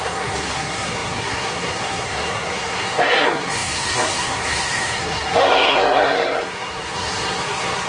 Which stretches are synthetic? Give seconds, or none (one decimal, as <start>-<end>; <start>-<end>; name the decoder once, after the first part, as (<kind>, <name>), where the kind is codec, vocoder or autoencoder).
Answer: 0.0-7.9 (codec, SNAC)